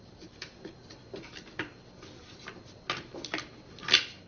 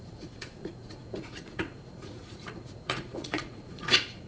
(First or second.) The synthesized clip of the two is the second